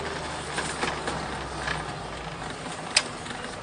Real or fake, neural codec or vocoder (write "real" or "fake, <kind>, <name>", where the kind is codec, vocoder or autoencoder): real